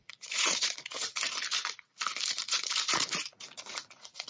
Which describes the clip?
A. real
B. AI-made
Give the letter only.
B